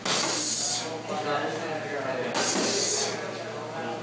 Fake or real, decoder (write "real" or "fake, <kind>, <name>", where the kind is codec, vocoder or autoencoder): real